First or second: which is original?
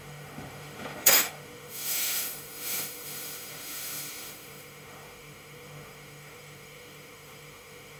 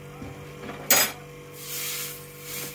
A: second